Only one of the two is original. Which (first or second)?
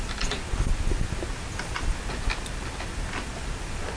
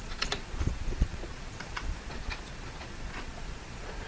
first